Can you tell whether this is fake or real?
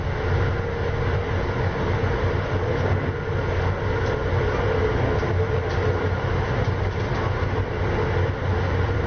real